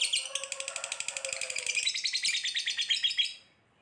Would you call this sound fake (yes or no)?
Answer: no